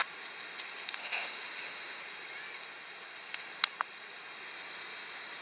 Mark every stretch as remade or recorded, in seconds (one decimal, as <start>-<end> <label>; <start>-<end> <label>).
0.0-1.0 recorded; 1.0-2.0 remade; 2.0-5.4 recorded